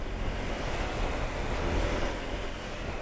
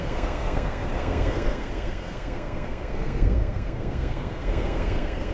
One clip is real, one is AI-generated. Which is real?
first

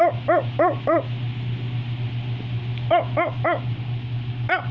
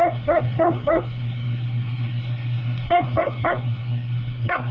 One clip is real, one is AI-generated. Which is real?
first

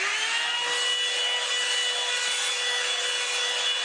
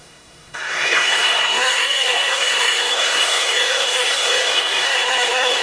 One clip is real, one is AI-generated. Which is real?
first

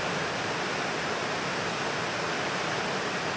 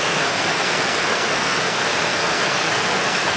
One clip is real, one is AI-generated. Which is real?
first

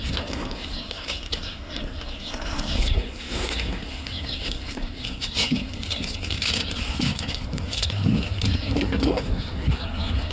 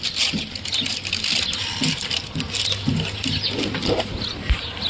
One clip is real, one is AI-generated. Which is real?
second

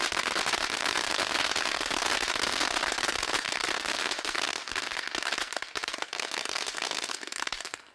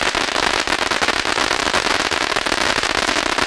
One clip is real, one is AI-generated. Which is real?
second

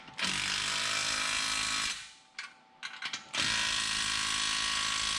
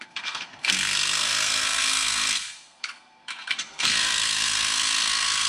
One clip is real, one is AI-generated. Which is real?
first